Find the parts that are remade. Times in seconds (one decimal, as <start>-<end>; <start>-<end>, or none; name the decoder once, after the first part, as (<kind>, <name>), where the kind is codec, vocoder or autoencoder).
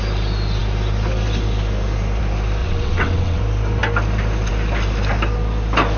2.6-3.4 (vocoder, WaveNeXt)